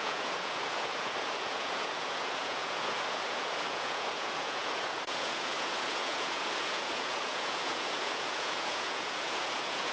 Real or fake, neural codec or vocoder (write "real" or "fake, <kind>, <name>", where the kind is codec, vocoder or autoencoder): fake, vocoder, Vocos